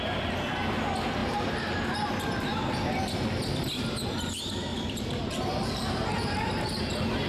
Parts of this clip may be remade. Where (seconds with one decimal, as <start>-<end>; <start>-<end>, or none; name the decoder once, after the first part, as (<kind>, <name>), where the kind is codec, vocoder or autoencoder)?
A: 1.2-1.8 (vocoder, BigVGAN v2); 4.7-6.8